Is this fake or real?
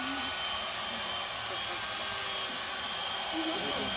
real